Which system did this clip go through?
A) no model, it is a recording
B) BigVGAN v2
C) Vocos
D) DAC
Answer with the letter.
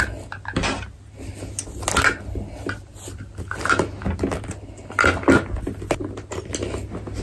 A